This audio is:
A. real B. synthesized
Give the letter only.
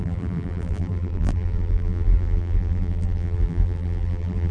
B